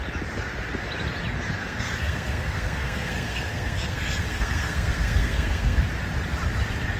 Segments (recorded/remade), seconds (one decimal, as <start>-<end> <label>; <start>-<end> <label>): 0.0-1.6 recorded; 1.6-5.8 remade; 5.8-7.0 recorded